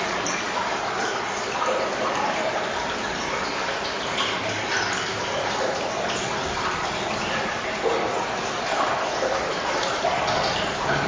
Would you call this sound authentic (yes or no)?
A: yes